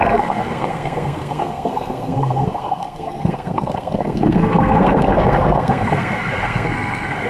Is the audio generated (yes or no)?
yes